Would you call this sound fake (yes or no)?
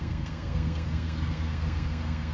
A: yes